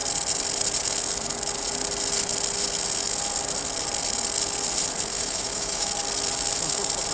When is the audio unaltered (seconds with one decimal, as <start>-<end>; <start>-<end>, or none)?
0.0-5.1; 5.9-7.1